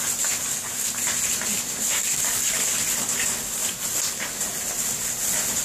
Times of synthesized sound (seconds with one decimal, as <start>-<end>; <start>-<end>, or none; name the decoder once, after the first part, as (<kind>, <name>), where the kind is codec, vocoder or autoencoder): 2.0-2.7 (codec, DAC)